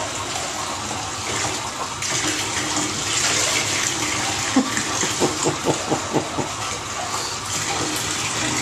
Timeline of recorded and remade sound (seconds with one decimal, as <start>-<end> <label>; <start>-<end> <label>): 0.0-8.6 recorded